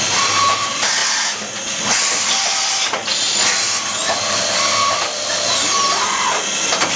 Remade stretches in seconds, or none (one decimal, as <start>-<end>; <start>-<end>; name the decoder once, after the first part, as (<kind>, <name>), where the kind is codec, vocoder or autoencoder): 0.0-1.0 (vocoder, BigVGAN v2); 4.9-7.0